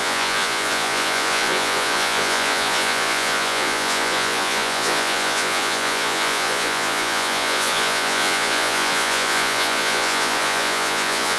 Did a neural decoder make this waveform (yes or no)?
yes